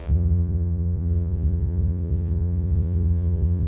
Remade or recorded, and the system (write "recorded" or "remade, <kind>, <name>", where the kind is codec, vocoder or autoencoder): remade, vocoder, Vocos